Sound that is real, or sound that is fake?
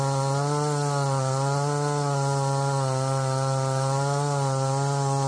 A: real